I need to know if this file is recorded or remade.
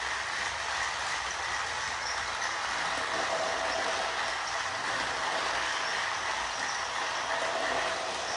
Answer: recorded